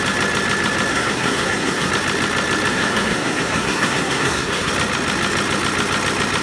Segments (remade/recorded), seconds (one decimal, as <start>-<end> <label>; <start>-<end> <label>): 0.0-0.9 recorded; 0.9-1.9 remade; 1.9-2.7 recorded; 2.7-4.7 remade; 4.7-6.4 recorded